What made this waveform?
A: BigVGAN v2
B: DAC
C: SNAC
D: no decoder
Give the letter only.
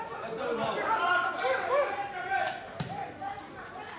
D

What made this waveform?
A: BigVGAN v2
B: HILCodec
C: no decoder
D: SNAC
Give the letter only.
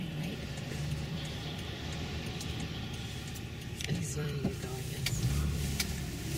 A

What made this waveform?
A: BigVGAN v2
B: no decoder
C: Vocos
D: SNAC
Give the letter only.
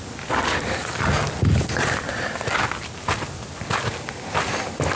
B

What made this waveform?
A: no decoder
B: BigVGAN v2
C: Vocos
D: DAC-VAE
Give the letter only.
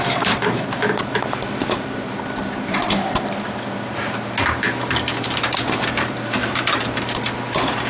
B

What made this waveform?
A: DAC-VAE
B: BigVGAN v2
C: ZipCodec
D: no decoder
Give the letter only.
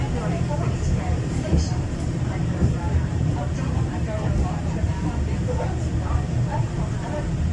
B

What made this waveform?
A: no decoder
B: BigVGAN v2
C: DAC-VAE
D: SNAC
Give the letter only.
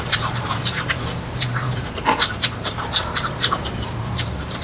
B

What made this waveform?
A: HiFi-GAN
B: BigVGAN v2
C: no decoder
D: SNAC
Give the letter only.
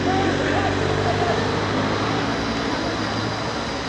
C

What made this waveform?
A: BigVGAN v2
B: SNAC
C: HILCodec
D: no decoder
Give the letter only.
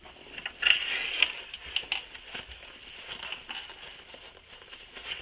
D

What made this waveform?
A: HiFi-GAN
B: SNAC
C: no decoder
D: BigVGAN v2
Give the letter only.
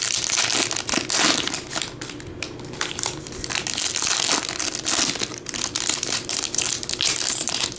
C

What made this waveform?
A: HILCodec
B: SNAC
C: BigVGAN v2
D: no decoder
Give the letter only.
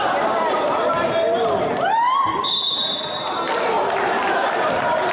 C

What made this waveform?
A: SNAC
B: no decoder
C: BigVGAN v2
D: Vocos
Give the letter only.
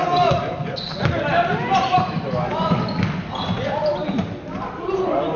B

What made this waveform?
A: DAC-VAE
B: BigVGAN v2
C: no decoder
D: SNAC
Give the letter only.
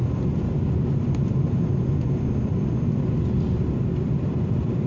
B